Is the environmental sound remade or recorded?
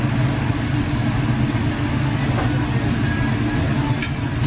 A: recorded